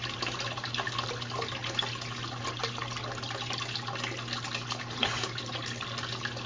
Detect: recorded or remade recorded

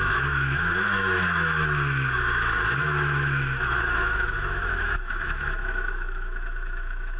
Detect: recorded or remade remade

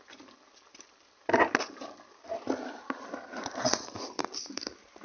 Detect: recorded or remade recorded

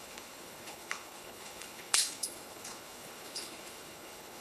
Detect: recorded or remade remade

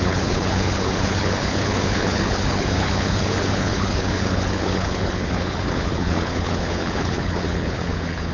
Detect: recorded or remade remade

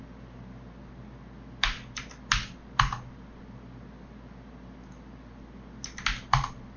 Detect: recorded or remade recorded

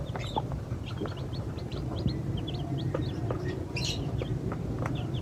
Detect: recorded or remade remade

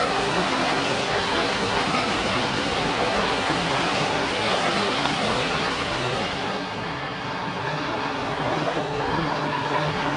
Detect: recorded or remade remade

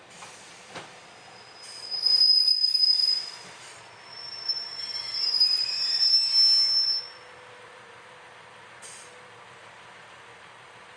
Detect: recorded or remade remade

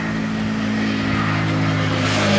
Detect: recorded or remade recorded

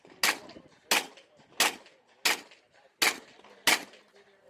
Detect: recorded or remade recorded